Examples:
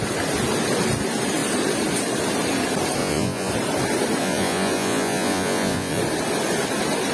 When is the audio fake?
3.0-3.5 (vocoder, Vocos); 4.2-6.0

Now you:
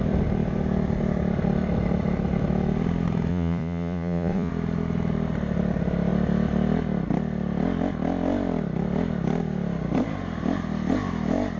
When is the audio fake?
3.3-4.5 (vocoder, Vocos)

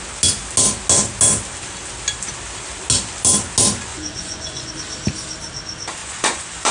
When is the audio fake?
3.9-4.7 (vocoder, Vocos); 6.0-6.7

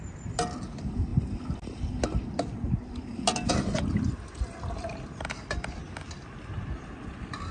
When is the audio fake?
none

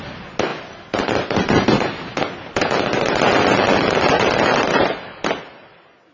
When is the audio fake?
none

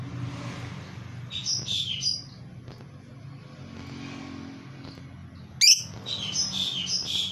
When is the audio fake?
none

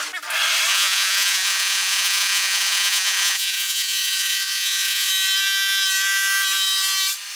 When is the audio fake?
0.7-5.1 (vocoder, Vocos)